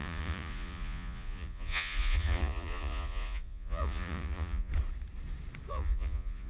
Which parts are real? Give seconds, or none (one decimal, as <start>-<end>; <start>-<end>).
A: 4.7-5.7